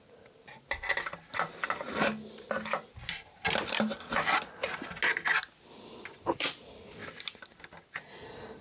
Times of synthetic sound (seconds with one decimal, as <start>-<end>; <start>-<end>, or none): none